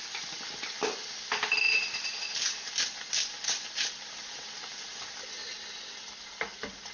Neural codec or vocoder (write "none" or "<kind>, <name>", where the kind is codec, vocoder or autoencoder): none